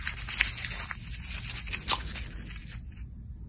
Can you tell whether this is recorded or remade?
recorded